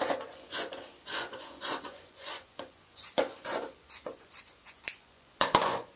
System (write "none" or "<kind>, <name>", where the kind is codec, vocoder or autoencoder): vocoder, Vocos